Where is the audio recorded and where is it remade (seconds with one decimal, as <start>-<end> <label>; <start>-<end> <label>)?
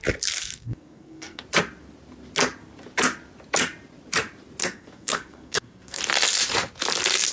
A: 0.0-0.4 recorded; 0.4-1.4 remade; 1.4-4.6 recorded; 4.6-6.0 remade; 6.0-7.3 recorded